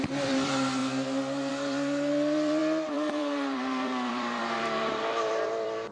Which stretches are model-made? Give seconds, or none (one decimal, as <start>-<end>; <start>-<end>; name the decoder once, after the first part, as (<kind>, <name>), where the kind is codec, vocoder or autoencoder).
0.0-0.8 (vocoder, BigVGAN v2); 1.5-5.9